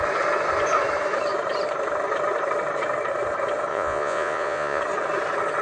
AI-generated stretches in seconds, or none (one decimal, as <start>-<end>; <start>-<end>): 3.7-4.8